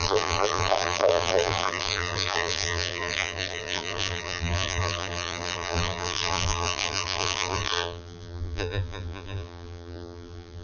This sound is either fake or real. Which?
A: fake